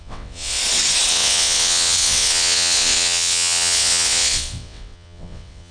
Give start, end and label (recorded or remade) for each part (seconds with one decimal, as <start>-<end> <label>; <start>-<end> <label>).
0.0-0.6 remade; 0.6-1.1 recorded; 1.1-5.7 remade

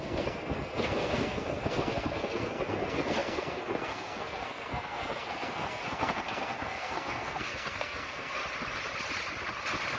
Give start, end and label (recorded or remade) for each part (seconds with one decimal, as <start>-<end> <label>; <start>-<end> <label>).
0.0-8.4 remade; 8.4-10.0 recorded

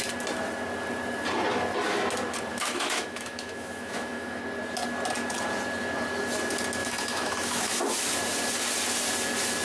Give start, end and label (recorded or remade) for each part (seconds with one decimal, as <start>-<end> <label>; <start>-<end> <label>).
0.0-2.5 recorded; 2.5-4.4 remade; 4.4-6.8 recorded; 6.8-7.8 remade; 7.8-9.6 recorded

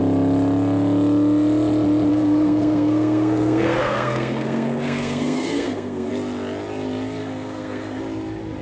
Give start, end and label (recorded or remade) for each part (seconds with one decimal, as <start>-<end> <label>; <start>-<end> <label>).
0.0-2.1 recorded; 2.1-6.1 remade; 6.1-7.2 recorded; 7.2-8.0 remade; 8.0-8.6 recorded